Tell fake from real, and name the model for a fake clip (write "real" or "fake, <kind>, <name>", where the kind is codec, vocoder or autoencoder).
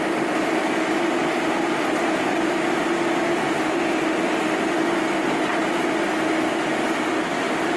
real